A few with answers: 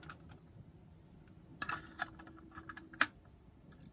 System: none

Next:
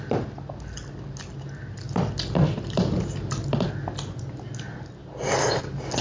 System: none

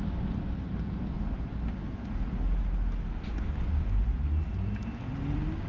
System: none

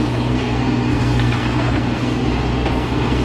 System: codec, SNAC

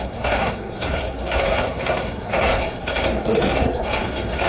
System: codec, SNAC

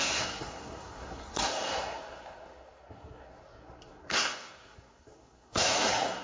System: codec, SNAC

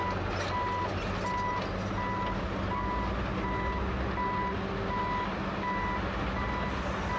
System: none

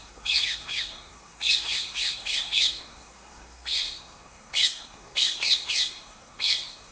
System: codec, SNAC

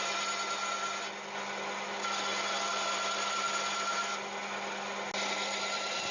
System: none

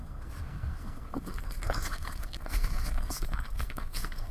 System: codec, SNAC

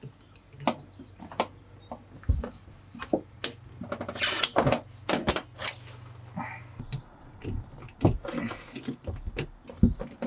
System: none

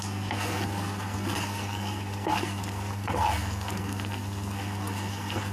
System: codec, SNAC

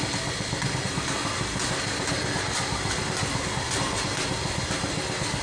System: none